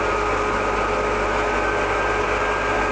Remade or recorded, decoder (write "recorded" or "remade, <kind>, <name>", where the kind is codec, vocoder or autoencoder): recorded